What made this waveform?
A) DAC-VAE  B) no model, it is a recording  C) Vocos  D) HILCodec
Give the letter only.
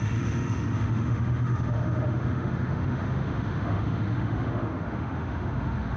A